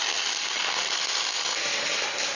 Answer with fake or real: real